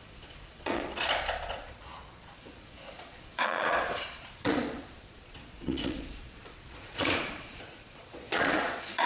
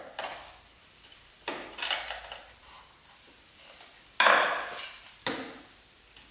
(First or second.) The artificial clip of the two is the first